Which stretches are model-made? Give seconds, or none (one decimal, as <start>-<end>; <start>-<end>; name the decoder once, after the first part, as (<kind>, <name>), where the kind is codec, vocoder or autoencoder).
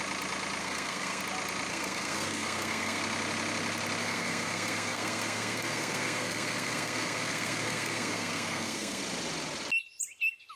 0.6-1.2 (codec, SNAC); 1.7-3.0; 4.0-9.0